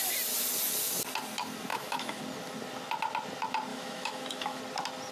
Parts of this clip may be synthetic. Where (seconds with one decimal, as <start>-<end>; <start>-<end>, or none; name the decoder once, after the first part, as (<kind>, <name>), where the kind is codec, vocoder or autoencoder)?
1.7-2.2 (autoencoder, DAC-VAE); 3.7-4.6